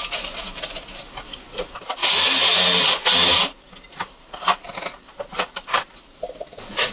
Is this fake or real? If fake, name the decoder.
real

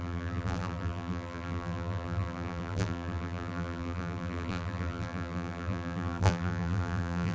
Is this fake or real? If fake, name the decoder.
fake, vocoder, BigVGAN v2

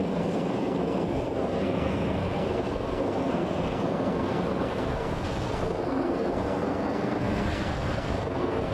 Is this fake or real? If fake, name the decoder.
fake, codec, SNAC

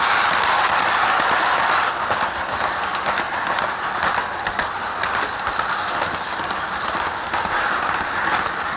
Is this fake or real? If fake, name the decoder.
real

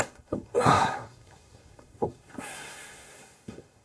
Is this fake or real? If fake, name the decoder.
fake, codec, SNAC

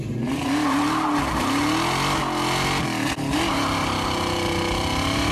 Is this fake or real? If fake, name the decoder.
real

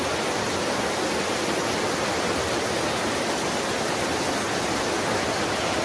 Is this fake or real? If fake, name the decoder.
real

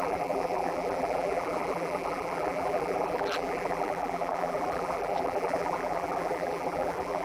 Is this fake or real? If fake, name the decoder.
fake, vocoder, BigVGAN v2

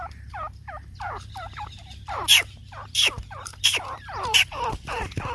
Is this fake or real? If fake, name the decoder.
fake, vocoder, BigVGAN v2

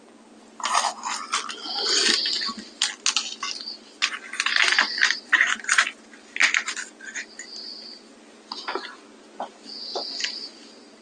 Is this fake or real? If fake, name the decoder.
real